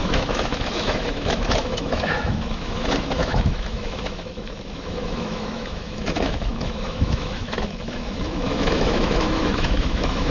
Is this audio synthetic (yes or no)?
yes